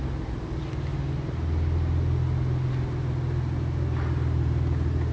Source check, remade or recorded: recorded